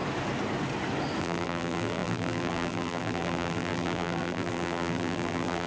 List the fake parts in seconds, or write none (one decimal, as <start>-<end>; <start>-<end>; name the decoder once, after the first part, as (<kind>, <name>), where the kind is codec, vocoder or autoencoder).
1.2-5.7 (vocoder, BigVGAN v2)